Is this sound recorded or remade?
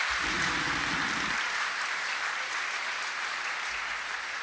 recorded